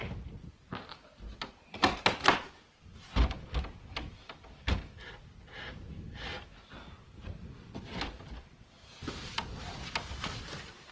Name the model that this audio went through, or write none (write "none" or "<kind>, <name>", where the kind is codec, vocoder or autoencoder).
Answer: none